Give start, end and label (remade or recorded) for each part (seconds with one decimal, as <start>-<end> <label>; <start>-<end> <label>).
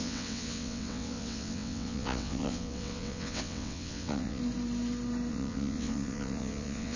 0.0-4.4 remade; 4.4-5.3 recorded; 5.3-7.0 remade